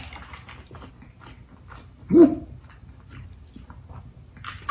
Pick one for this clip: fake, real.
real